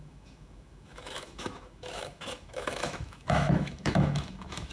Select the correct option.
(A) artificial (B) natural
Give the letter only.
A